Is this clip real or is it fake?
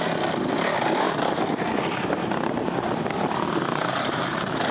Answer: real